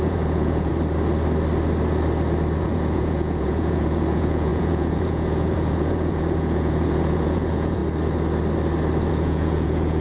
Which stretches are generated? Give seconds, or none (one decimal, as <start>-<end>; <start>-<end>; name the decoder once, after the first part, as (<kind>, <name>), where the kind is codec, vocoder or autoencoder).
0.0-0.7 (vocoder, Vocos); 2.6-7.8; 9.1-10.0